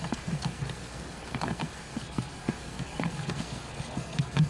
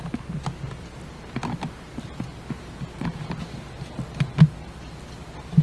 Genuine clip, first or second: second